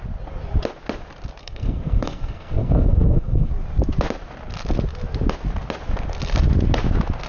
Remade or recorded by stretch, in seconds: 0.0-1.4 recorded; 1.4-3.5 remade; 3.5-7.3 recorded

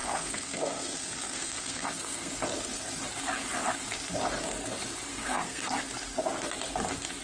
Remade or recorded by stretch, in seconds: 0.0-2.3 remade; 2.3-5.1 recorded; 5.1-5.7 remade; 5.7-7.2 recorded

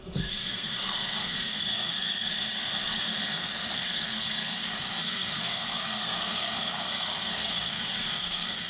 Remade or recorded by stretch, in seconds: 0.0-8.7 remade

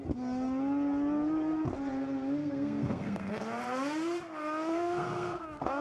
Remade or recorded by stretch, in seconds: 0.0-2.4 recorded; 2.4-3.3 remade; 3.3-4.7 recorded; 4.7-5.8 remade